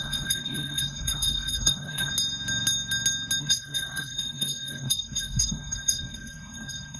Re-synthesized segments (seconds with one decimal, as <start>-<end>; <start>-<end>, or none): 0.0-2.1; 3.4-7.0